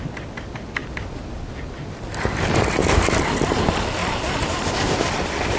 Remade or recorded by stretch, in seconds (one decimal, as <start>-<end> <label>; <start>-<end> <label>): 0.0-4.0 recorded; 4.0-4.7 remade; 4.7-5.6 recorded